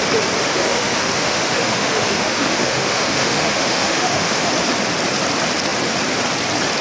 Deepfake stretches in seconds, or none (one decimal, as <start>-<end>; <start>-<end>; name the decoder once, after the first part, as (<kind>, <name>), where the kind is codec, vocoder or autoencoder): 0.4-4.5 (autoencoder, DAC-VAE)